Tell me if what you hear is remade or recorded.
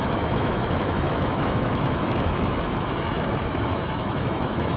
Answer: remade